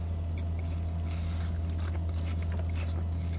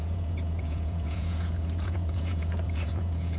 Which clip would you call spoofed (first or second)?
second